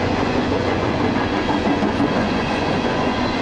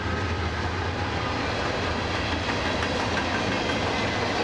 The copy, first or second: first